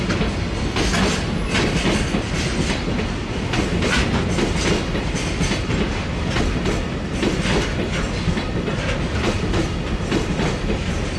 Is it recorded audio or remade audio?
recorded